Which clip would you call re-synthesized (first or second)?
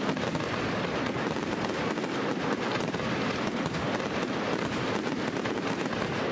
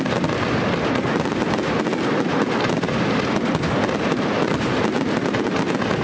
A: first